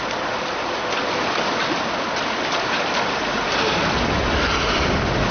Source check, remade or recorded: recorded